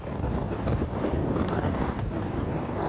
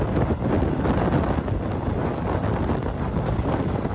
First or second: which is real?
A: second